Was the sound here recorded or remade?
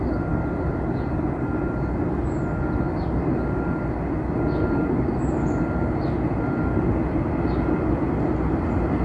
recorded